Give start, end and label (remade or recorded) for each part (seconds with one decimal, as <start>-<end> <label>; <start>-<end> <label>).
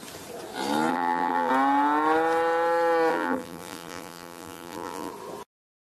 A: 0.0-0.9 recorded; 0.9-1.5 remade; 1.5-3.1 recorded; 3.1-5.1 remade; 5.1-5.9 recorded